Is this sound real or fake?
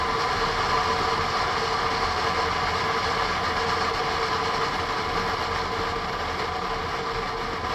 real